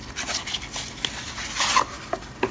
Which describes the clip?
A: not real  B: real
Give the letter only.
B